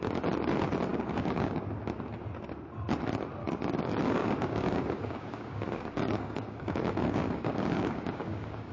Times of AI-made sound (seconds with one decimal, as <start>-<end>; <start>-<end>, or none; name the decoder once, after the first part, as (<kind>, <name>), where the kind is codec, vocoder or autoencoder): 0.9-1.6 (codec, DAC); 3.4-8.7